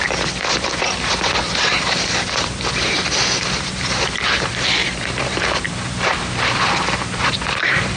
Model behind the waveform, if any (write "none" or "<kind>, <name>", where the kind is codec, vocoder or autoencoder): vocoder, BigVGAN v2